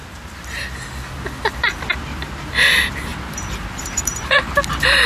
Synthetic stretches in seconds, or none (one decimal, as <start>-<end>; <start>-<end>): 3.1-5.1